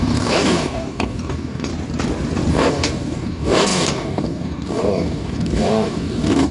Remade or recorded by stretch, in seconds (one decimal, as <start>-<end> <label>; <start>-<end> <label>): 0.0-1.7 remade; 1.7-2.5 recorded; 2.5-6.5 remade